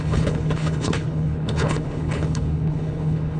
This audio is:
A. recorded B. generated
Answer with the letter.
B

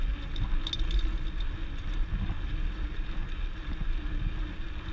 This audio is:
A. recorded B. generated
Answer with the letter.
A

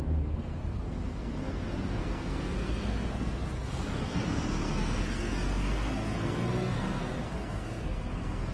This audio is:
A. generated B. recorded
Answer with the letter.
A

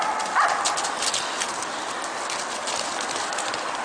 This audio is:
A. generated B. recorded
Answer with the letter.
B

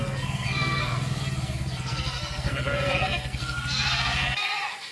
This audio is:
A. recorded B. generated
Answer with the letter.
B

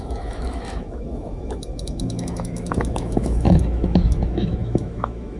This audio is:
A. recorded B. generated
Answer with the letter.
B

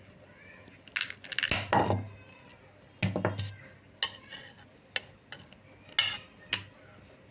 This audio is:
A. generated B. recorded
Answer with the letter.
B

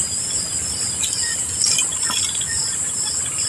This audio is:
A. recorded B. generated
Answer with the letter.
A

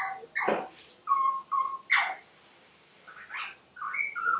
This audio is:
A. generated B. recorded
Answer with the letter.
B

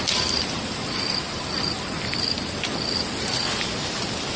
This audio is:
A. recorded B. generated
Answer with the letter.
A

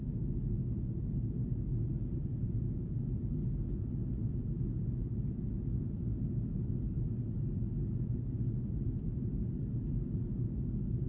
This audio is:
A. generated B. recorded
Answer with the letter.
B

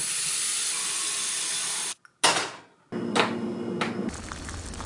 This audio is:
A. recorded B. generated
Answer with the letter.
A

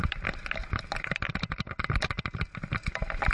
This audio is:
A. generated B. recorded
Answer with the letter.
B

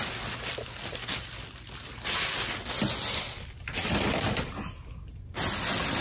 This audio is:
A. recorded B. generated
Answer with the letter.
A